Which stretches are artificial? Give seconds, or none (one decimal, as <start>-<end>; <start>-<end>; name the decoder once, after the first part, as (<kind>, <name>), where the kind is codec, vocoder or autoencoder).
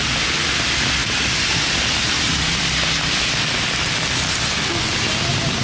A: none